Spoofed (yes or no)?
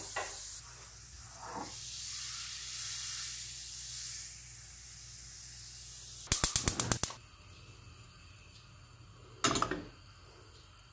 no